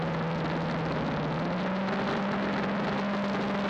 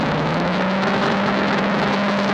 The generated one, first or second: second